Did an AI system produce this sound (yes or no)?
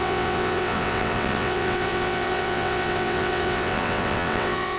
yes